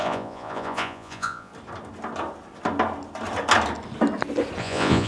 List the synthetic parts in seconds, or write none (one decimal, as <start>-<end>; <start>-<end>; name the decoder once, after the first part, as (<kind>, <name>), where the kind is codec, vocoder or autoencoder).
0.0-1.5 (vocoder, Vocos); 4.6-5.1